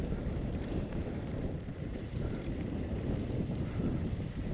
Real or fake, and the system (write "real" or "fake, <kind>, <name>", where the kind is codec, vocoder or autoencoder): fake, vocoder, BigVGAN v2